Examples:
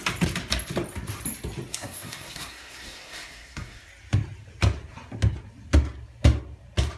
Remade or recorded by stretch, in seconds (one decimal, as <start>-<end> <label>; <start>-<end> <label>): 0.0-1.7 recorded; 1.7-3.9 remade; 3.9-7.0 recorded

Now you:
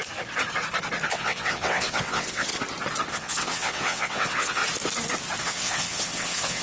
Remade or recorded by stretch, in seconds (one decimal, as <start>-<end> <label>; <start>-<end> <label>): 0.0-1.1 recorded; 1.1-2.5 remade; 2.5-3.1 recorded; 3.1-4.6 remade; 4.6-5.4 recorded; 5.4-6.6 remade

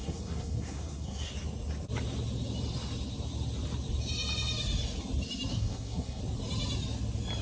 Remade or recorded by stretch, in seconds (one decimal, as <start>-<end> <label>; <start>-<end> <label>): 0.0-1.3 remade; 1.3-5.5 recorded; 5.5-6.2 remade; 6.2-7.4 recorded

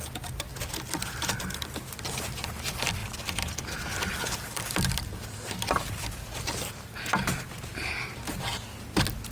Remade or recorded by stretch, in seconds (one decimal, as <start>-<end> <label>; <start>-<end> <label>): 0.0-0.5 recorded; 0.5-2.2 remade; 2.2-3.0 recorded; 3.0-6.4 remade; 6.4-9.3 recorded

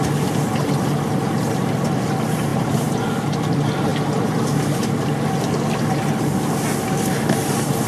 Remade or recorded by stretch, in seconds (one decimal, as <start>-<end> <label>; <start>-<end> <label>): 0.0-2.5 recorded; 2.5-3.1 remade; 3.1-7.9 recorded

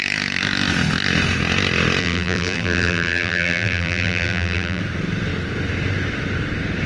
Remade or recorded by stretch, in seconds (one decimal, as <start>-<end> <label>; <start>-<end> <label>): 0.0-2.0 recorded; 2.0-4.8 remade; 4.8-6.9 recorded